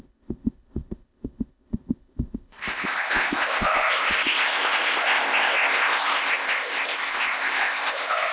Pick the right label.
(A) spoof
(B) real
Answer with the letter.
A